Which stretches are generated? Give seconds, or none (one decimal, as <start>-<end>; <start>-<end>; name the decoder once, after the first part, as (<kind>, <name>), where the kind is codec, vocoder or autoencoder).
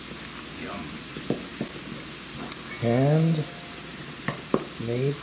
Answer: 3.9-5.2 (vocoder, BigVGAN v2)